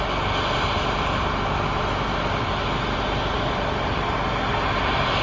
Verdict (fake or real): real